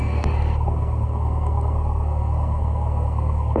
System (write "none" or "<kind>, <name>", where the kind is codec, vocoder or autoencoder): codec, SNAC